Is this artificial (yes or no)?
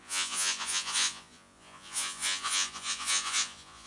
yes